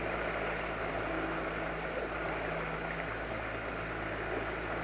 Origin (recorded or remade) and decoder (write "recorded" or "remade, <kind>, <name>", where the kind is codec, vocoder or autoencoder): recorded